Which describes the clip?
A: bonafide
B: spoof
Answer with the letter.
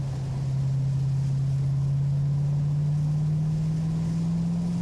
A